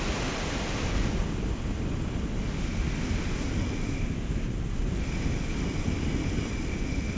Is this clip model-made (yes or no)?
yes